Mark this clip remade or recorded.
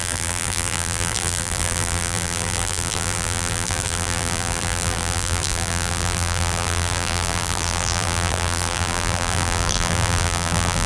remade